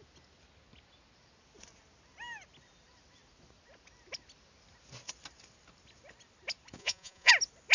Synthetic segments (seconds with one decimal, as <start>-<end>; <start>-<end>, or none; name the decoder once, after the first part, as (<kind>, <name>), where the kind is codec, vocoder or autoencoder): 6.8-7.3 (vocoder, Vocos)